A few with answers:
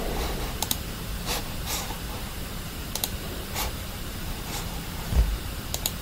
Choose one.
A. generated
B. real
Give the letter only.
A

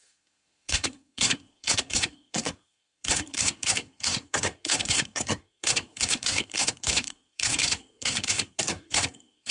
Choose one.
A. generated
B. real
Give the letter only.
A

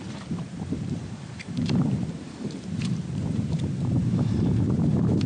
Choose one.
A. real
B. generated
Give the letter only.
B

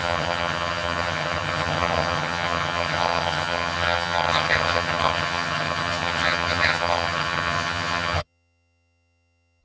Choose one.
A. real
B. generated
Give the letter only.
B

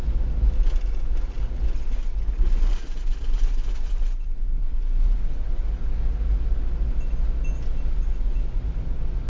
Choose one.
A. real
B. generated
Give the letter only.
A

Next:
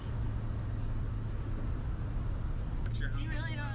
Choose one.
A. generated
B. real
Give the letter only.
B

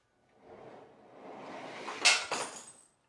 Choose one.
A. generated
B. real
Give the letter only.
B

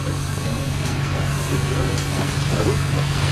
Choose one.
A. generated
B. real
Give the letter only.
A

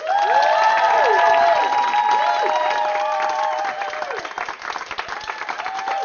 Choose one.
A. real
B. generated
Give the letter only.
A